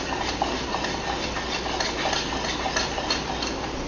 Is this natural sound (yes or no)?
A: yes